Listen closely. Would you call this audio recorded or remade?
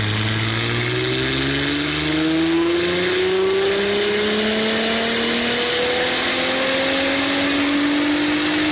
recorded